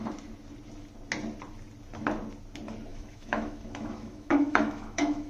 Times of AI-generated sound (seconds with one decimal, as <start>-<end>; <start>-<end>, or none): 2.9-5.3